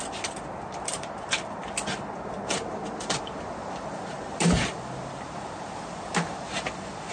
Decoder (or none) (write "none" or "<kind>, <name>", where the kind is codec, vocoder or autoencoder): none